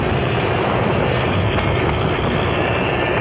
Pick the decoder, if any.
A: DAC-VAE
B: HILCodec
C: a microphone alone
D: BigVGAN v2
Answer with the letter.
C